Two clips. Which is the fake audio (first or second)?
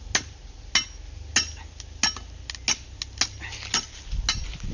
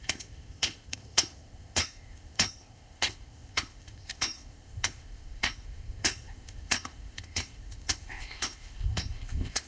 second